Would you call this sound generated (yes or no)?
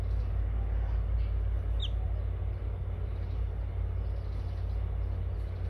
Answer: no